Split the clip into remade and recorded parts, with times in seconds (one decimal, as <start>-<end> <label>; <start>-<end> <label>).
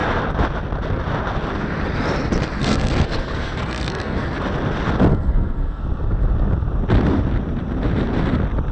0.0-2.6 recorded; 2.6-4.3 remade; 4.3-5.1 recorded; 5.1-5.8 remade; 5.8-8.7 recorded